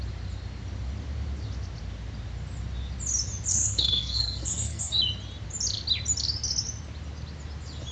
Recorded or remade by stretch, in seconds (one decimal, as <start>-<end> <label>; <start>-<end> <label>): 0.0-3.5 recorded; 3.5-5.0 remade; 5.0-7.9 recorded